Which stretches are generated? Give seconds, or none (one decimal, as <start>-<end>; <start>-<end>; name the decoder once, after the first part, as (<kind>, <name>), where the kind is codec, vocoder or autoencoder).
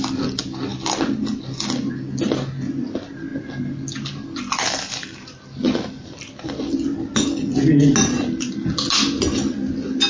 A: none